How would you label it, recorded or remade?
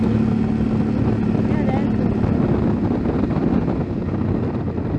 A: recorded